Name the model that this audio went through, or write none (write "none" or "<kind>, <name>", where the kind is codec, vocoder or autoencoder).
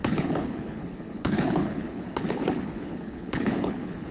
codec, HILCodec